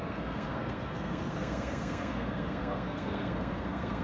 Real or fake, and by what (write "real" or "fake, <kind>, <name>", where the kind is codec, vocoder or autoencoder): fake, codec, SNAC